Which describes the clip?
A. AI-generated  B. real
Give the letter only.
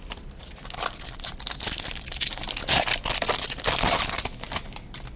A